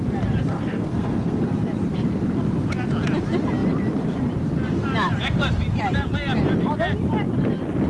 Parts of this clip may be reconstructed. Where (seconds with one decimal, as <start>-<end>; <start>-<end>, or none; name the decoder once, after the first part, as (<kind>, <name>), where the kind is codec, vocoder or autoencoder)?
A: 0.5-1.4 (codec, SNAC)